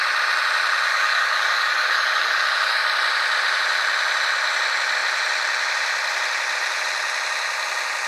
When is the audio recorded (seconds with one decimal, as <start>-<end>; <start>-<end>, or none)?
0.0-0.9; 2.8-8.1